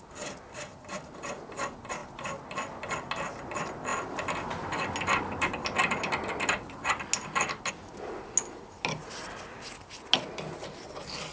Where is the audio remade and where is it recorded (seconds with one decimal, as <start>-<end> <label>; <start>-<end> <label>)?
0.0-11.3 recorded